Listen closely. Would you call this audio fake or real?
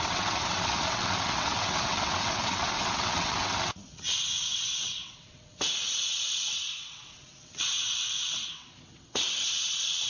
fake